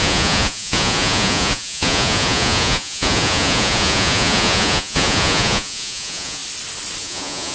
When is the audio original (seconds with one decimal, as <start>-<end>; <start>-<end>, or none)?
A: 6.4-7.0

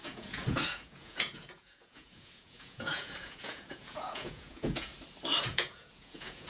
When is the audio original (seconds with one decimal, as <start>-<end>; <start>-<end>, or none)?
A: 4.9-5.4

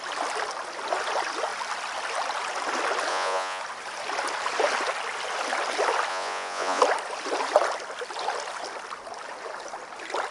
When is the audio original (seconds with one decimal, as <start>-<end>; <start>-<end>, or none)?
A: 0.0-3.1; 3.6-6.1; 6.8-10.3

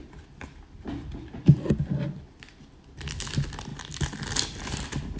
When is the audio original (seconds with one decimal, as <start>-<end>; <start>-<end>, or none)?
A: 0.0-5.2